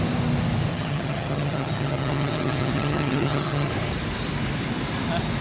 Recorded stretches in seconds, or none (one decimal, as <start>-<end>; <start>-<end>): 0.0-0.7; 3.7-5.4